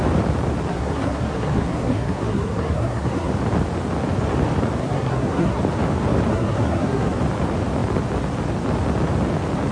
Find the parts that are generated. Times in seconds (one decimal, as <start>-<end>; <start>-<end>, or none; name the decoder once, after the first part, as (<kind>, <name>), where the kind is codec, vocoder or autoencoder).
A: 0.7-3.3 (codec, SNAC); 4.8-5.6; 6.3-7.2